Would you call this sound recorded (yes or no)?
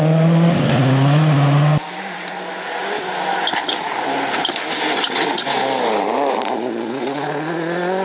yes